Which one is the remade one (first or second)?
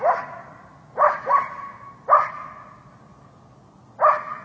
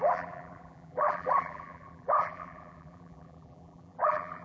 second